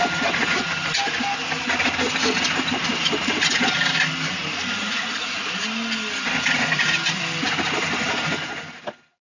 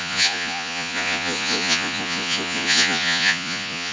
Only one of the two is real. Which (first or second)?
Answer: first